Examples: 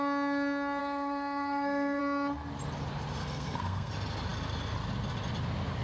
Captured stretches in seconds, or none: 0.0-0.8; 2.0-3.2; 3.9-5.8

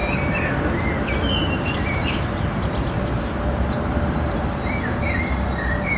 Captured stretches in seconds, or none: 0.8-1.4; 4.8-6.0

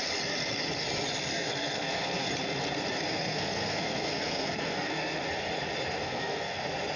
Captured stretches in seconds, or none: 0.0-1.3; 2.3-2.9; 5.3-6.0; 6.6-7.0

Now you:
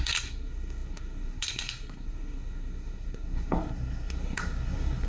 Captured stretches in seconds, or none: none

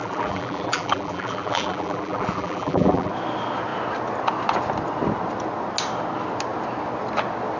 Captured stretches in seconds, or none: 3.1-7.6